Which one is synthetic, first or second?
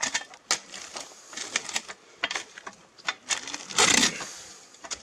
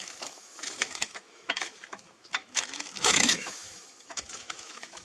second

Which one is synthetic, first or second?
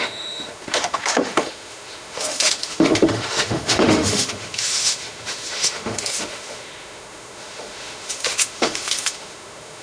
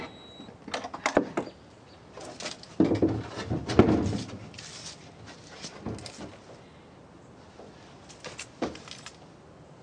first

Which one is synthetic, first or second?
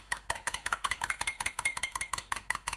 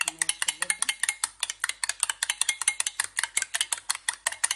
first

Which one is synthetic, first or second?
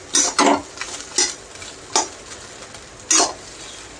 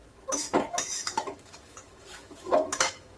second